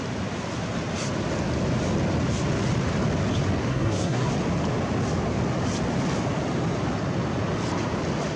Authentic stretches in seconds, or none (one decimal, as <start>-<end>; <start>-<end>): 0.0-3.6; 4.3-8.4